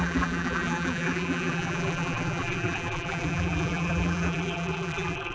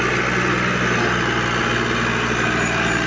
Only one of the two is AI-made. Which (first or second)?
first